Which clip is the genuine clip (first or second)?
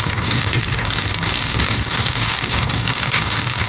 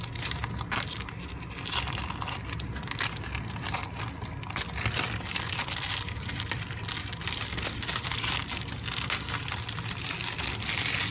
second